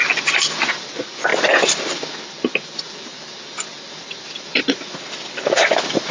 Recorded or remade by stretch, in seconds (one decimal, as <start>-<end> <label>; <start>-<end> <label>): 0.0-1.3 remade; 1.3-3.9 recorded; 3.9-6.1 remade